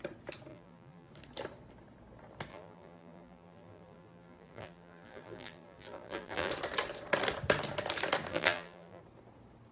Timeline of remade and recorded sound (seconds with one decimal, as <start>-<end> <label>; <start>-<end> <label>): 0.0-0.5 recorded; 0.5-1.1 remade; 1.1-2.5 recorded; 2.5-6.5 remade; 6.5-8.3 recorded; 8.3-9.0 remade; 9.0-9.7 recorded